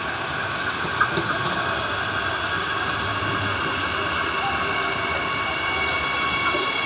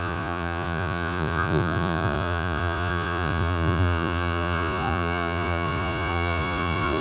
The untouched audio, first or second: first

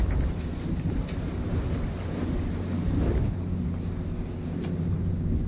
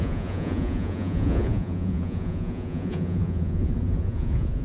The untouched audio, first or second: first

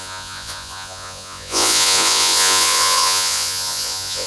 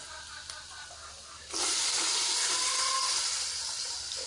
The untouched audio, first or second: second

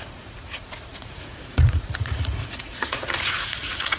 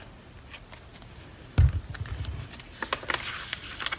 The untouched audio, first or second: second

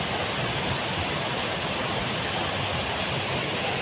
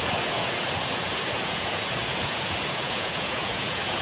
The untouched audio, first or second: first